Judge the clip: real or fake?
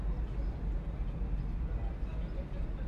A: real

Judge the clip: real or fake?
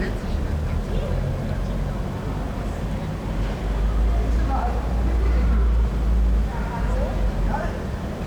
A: real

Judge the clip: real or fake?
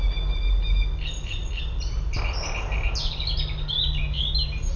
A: real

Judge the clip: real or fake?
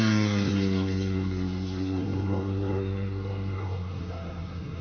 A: fake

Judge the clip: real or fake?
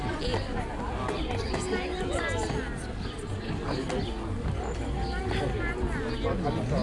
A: real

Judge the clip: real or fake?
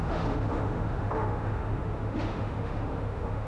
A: fake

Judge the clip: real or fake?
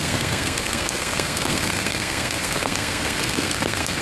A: fake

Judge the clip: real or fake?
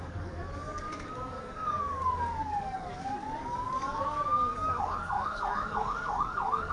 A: fake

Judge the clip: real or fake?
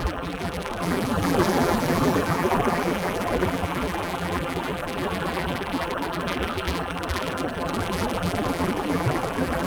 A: fake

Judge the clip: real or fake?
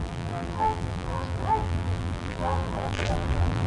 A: fake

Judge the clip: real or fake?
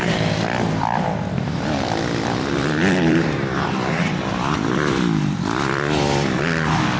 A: fake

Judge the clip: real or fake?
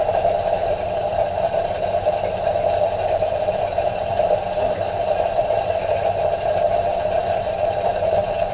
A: fake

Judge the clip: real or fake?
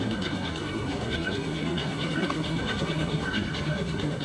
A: fake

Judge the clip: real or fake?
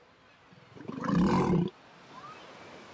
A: real